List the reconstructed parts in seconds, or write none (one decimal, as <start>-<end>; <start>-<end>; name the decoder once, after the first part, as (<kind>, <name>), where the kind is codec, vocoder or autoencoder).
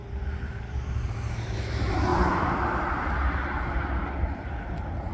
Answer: none